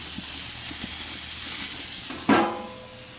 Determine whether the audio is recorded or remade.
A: recorded